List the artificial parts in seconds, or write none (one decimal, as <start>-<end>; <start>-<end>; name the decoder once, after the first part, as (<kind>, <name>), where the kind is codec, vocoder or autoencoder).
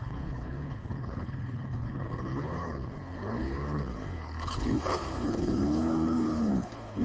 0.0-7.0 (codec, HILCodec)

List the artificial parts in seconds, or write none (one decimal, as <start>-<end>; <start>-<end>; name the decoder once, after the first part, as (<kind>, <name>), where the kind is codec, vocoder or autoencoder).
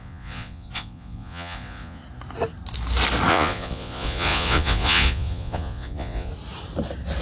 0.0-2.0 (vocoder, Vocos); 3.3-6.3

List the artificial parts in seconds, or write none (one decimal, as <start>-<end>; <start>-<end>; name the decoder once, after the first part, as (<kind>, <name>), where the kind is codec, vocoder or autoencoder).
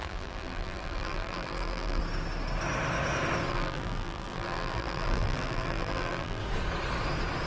0.0-2.0 (vocoder, BigVGAN v2); 3.5-6.4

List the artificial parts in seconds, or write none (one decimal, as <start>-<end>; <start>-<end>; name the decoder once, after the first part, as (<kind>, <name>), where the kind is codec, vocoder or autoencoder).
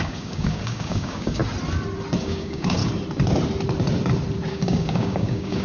0.0-1.4 (codec, DAC); 2.2-2.8; 4.5-5.6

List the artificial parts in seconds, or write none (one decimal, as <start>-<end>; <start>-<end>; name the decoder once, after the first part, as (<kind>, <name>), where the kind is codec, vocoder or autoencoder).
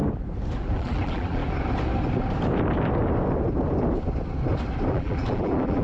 0.6-1.4 (vocoder, BigVGAN v2); 4.9-5.8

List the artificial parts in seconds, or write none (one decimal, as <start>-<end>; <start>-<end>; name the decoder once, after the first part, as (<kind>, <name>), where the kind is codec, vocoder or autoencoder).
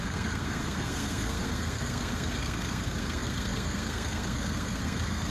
0.0-5.3 (codec, SNAC)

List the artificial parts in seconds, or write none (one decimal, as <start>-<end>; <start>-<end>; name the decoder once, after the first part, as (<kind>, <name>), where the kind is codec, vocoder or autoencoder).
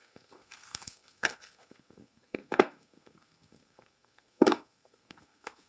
0.0-5.7 (codec, SNAC)